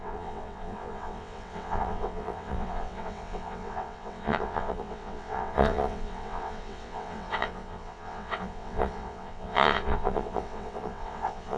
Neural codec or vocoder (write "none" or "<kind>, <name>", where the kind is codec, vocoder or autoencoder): vocoder, WaveNeXt